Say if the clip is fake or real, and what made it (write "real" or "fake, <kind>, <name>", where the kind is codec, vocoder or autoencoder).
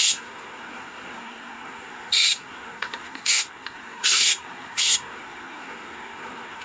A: fake, codec, SNAC